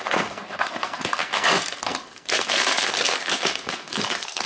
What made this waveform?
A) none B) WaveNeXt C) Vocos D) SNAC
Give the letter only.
D